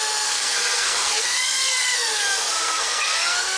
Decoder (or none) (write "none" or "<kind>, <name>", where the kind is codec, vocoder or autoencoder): codec, SNAC